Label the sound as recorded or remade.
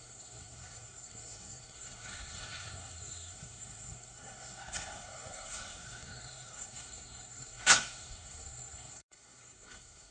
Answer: remade